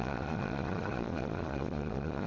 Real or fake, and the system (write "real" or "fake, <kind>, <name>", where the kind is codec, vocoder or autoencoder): fake, vocoder, Vocos